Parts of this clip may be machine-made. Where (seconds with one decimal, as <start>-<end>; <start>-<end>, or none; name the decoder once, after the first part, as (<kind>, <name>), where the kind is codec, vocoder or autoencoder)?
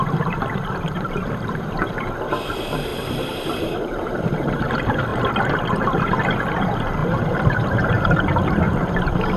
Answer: 0.0-2.9 (vocoder, BigVGAN v2); 3.6-5.1; 5.7-9.4